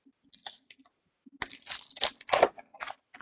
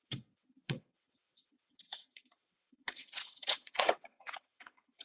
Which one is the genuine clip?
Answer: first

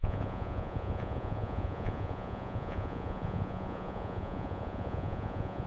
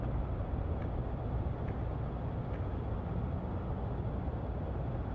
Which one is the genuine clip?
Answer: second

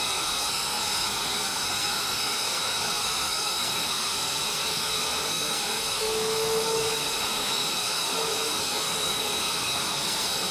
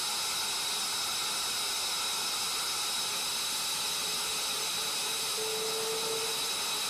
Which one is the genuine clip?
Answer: second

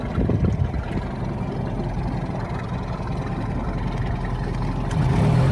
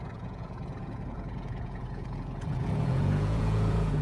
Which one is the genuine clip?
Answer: first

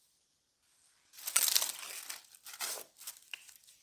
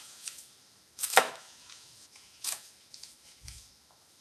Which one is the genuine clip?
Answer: first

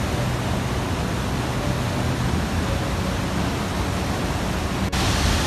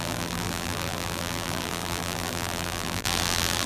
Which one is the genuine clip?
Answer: first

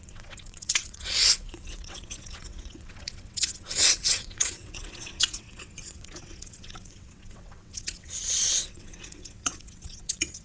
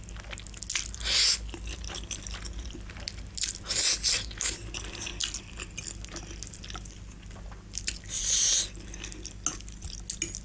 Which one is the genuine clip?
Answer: second